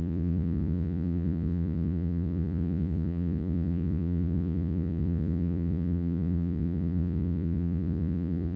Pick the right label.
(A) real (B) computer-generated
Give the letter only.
B